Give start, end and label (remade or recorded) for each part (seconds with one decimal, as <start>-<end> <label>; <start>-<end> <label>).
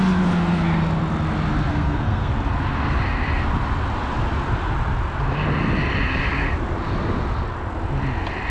0.0-1.7 recorded; 1.7-2.3 remade; 2.3-8.5 recorded